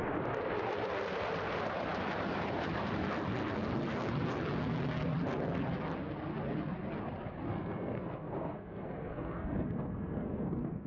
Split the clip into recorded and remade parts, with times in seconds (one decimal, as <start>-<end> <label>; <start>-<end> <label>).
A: 0.0-7.5 recorded; 7.5-10.9 remade